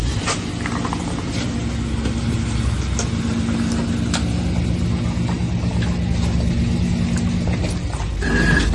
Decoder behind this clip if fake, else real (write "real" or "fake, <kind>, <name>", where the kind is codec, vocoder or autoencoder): real